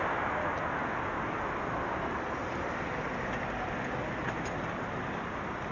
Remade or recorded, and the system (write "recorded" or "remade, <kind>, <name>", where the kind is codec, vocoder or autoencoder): recorded